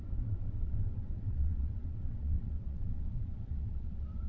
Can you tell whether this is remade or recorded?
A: remade